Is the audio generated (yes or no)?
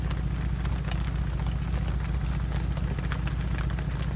no